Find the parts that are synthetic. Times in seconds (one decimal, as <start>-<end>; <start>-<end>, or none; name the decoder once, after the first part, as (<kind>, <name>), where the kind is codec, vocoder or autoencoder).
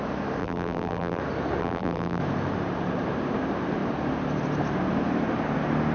0.4-1.2 (vocoder, BigVGAN v2); 1.6-2.2